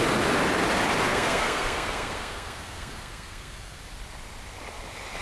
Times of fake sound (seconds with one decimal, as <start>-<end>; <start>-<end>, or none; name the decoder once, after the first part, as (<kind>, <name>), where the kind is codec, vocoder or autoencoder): 1.1-3.8 (codec, SNAC)